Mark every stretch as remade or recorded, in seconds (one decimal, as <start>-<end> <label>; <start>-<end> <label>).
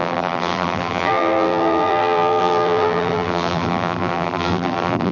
0.0-5.1 remade